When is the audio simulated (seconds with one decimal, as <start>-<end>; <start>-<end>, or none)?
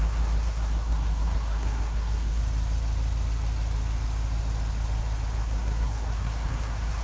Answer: 0.0-2.4; 5.4-7.0